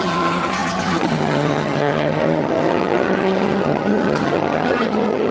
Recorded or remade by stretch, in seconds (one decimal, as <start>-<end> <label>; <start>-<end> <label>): 0.0-5.3 remade